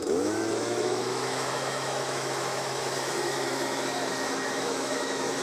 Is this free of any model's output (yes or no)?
no